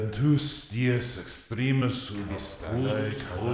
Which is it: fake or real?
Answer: real